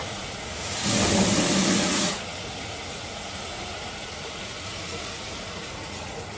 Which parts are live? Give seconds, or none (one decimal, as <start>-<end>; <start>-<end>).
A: 0.8-1.8